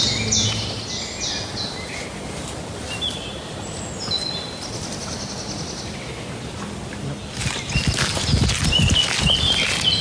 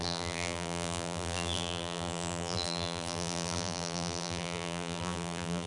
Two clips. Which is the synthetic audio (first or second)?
second